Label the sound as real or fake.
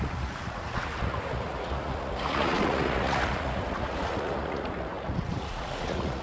fake